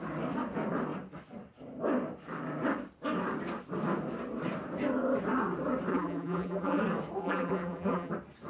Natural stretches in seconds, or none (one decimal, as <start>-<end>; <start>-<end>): 0.0-5.9; 6.8-7.2; 8.1-8.5